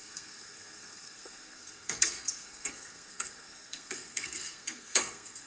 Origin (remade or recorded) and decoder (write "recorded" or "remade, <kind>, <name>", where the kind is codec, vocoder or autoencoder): remade, codec, SNAC